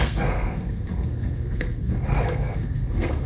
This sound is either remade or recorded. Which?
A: remade